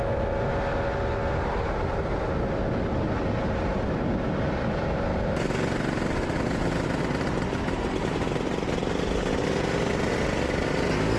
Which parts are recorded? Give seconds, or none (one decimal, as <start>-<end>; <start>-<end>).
0.0-11.2